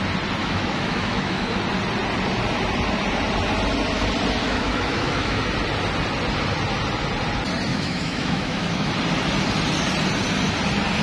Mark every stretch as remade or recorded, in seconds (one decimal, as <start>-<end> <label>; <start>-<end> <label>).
0.0-0.4 recorded; 0.4-1.6 remade; 1.6-4.4 recorded; 4.4-5.4 remade; 5.4-7.7 recorded; 7.7-8.9 remade; 8.9-11.0 recorded